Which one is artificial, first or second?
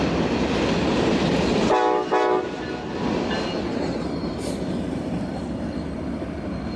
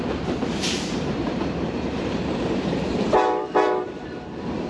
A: second